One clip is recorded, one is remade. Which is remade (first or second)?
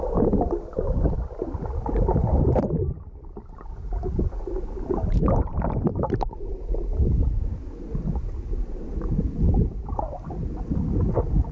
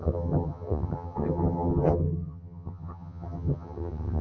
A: second